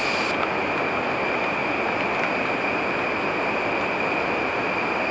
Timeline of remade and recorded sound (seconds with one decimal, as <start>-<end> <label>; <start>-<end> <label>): 0.0-5.1 recorded